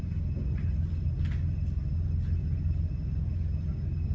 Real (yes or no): yes